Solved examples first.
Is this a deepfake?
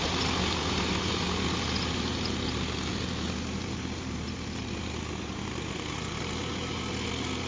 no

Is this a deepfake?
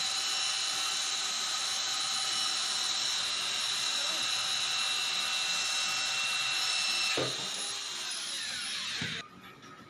no